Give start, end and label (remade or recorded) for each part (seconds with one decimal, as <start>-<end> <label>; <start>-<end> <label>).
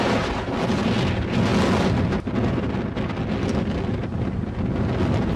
0.0-5.4 recorded